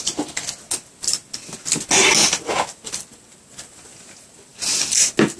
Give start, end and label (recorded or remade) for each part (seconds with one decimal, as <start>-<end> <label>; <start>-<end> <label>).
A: 0.0-5.4 recorded